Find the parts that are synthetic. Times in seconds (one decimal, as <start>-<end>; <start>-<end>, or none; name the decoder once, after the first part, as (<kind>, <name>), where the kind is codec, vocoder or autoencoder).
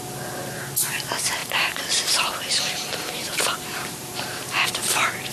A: 1.4-4.5 (vocoder, BigVGAN v2)